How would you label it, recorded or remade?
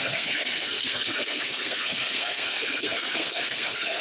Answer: remade